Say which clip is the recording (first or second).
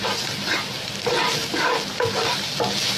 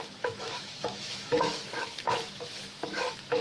first